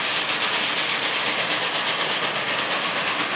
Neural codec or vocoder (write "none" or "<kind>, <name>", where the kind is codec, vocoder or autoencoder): none